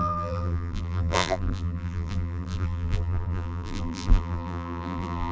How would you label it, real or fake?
fake